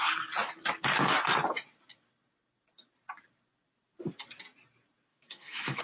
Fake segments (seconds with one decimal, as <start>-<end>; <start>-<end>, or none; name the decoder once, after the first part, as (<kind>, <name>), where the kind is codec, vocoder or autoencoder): 5.1-5.8 (autoencoder, DAC-VAE)